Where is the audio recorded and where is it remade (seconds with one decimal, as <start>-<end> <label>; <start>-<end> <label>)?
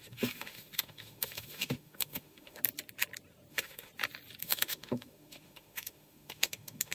0.0-2.6 remade; 2.6-3.5 recorded; 3.5-3.9 remade; 3.9-4.4 recorded; 4.4-6.9 remade